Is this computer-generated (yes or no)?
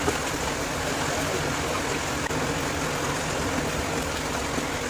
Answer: no